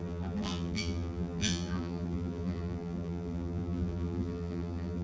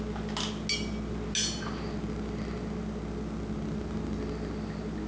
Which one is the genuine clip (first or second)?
second